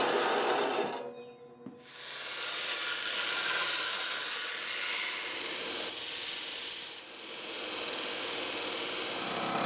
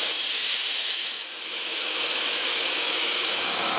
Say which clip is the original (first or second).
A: first